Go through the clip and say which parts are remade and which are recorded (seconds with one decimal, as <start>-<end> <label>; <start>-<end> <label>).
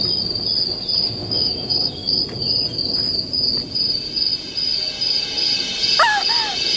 0.0-1.2 recorded; 1.2-2.2 remade; 2.2-6.8 recorded